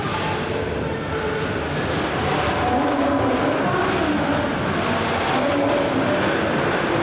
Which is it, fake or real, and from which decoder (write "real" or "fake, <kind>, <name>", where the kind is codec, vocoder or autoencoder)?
real